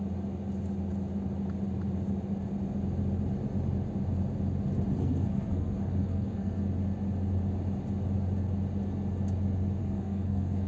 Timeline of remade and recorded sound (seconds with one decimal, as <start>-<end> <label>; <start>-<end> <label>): 0.0-5.0 recorded; 5.0-6.6 remade; 6.6-9.8 recorded; 9.8-10.7 remade